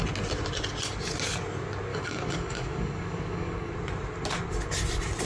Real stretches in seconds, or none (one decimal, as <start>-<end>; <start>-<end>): 0.0-1.9; 3.7-5.3